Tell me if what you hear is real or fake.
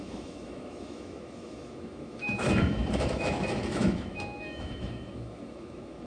fake